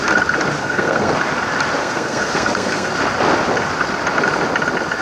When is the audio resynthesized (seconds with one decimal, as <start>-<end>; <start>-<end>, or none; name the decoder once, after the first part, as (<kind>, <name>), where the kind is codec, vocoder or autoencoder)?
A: 0.6-1.1 (codec, SNAC); 1.8-2.9